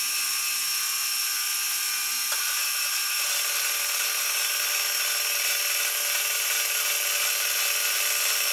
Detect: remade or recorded recorded